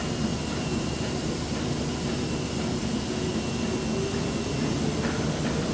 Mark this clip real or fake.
real